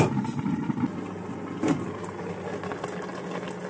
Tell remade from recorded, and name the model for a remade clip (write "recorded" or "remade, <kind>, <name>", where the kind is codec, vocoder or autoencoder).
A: recorded